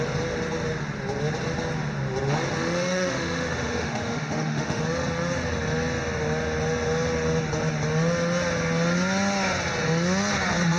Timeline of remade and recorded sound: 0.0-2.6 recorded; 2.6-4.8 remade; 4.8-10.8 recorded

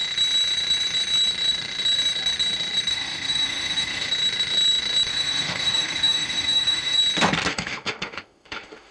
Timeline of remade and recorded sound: 0.0-2.9 recorded; 2.9-4.1 remade; 4.1-5.1 recorded; 5.1-7.0 remade; 7.0-7.5 recorded; 7.5-8.9 remade